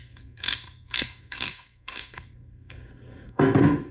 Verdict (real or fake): fake